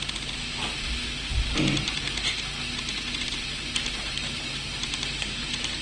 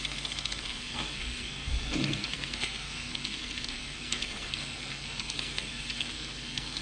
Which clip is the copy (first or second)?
second